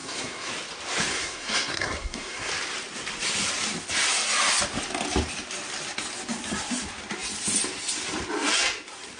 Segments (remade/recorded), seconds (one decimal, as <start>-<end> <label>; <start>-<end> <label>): 0.0-0.5 remade; 0.5-1.1 recorded; 1.1-2.5 remade; 2.5-9.2 recorded